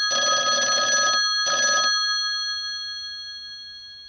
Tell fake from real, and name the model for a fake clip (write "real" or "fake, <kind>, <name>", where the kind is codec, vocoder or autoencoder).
real